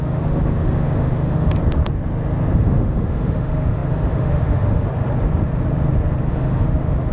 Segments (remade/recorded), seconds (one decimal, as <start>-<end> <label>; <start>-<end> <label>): 0.0-1.6 remade; 1.6-2.6 recorded; 2.6-4.9 remade; 4.9-6.3 recorded; 6.3-7.1 remade